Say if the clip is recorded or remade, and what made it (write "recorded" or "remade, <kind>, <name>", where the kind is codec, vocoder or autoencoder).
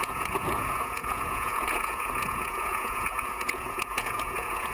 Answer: remade, vocoder, Vocos